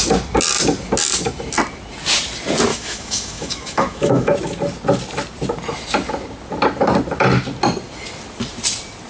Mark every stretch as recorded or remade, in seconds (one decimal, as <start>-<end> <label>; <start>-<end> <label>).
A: 0.0-2.7 recorded; 2.7-4.3 remade; 4.3-9.1 recorded

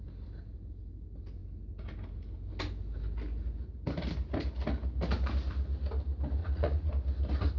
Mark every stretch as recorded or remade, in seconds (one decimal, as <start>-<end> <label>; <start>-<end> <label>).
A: 0.0-6.4 recorded; 6.4-6.9 remade; 6.9-7.6 recorded

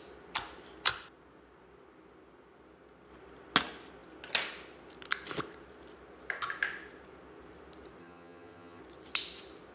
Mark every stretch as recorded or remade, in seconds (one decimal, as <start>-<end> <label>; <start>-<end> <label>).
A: 0.0-8.0 recorded; 8.0-8.8 remade; 8.8-9.7 recorded

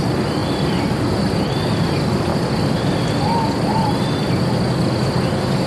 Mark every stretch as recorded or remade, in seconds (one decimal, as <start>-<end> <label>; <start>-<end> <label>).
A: 0.0-5.7 recorded